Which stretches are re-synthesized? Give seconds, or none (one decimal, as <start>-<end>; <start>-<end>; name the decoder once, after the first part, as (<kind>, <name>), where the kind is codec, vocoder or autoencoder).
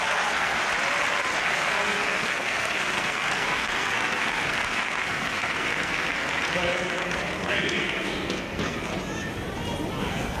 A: 0.0-0.6 (codec, SNAC); 1.4-8.9; 10.0-10.4